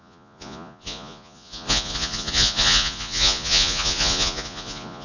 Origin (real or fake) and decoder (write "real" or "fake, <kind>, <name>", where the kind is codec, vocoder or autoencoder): fake, vocoder, Vocos